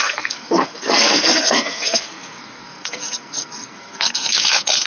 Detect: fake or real fake